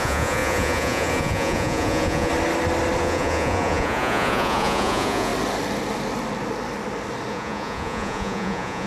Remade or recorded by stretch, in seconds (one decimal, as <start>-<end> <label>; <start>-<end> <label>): 0.0-2.3 remade; 2.3-3.0 recorded; 3.0-5.3 remade; 5.3-7.3 recorded; 7.3-8.9 remade